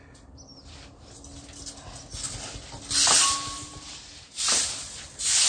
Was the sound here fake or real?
real